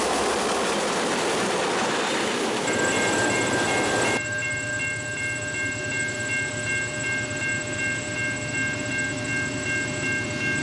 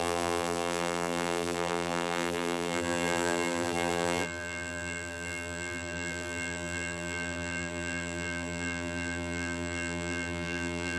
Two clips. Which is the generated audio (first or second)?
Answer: second